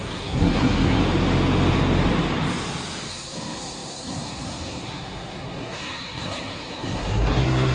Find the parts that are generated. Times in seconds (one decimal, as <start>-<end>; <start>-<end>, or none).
0.0-1.0; 3.1-7.7